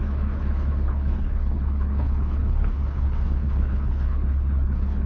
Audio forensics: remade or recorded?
remade